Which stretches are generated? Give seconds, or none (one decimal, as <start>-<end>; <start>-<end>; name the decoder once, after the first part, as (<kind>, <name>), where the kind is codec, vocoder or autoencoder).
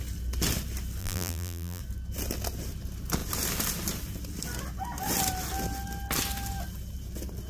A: 1.0-1.8 (vocoder, BigVGAN v2)